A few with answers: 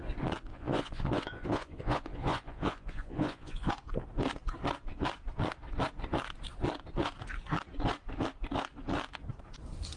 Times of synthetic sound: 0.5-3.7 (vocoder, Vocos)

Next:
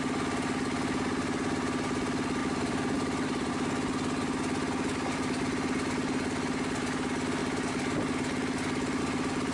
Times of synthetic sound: 2.4-3.5 (vocoder, BigVGAN v2)

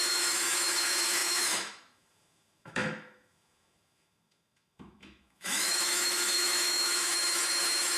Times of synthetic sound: 0.0-8.0 (autoencoder, DAC-VAE)